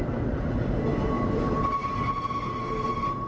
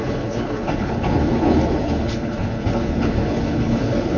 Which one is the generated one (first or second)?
second